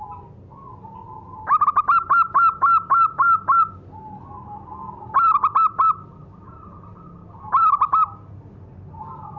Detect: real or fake real